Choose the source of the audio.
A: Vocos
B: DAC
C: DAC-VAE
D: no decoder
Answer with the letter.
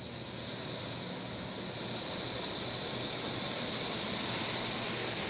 D